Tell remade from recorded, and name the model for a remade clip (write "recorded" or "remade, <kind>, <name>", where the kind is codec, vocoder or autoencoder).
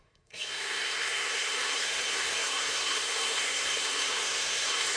remade, codec, SNAC